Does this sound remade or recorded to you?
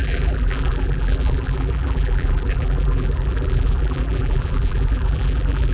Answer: remade